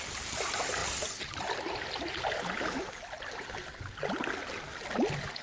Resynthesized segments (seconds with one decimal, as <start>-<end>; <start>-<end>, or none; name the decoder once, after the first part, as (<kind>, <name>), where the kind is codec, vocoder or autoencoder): none